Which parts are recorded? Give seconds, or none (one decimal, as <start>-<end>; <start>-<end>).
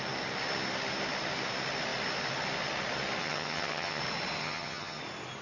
0.0-3.2; 4.0-4.4; 5.0-5.4